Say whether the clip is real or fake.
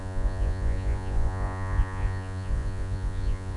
fake